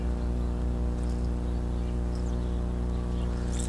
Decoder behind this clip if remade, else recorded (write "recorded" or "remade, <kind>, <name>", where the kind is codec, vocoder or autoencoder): recorded